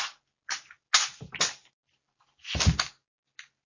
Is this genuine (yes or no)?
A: yes